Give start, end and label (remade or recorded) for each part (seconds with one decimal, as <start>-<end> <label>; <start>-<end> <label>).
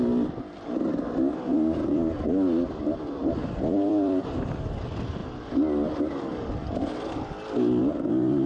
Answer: 0.0-1.5 recorded; 1.5-4.5 remade; 4.5-5.2 recorded; 5.2-6.0 remade; 6.0-8.5 recorded